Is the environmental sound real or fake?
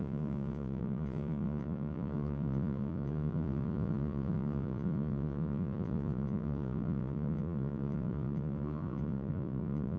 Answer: fake